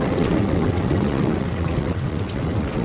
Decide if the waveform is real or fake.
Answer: fake